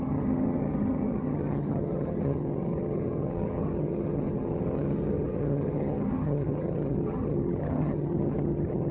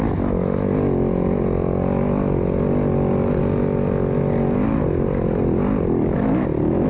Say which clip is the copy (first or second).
first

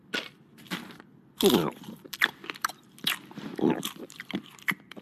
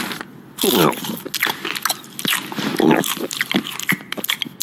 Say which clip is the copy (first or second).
first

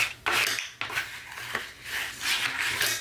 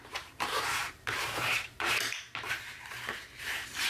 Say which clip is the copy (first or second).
second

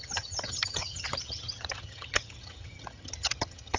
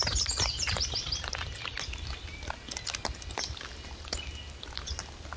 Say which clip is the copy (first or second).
first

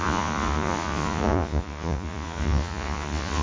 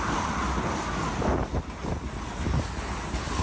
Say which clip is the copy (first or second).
first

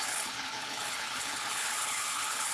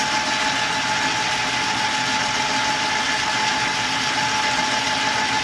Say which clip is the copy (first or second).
first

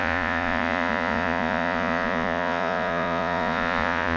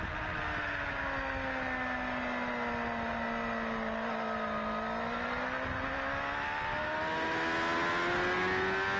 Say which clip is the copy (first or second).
first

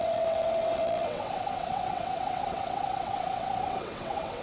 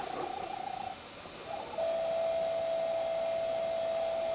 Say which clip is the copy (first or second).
first